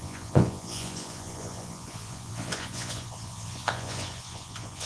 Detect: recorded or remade remade